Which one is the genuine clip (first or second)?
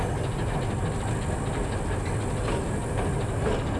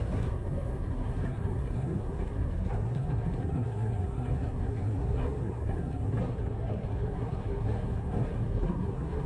first